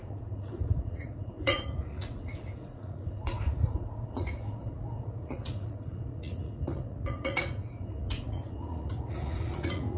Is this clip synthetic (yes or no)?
yes